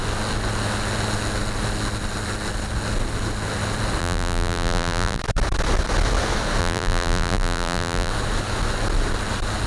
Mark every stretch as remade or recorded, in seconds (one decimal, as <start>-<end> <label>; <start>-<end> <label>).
0.0-4.0 recorded; 4.0-5.2 remade; 5.2-6.6 recorded; 6.6-8.1 remade; 8.1-9.7 recorded